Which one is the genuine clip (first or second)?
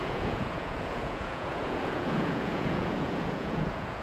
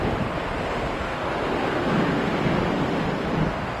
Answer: second